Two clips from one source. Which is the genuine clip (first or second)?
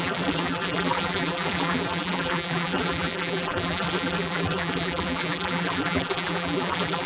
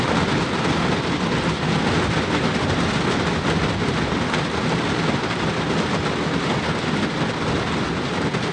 second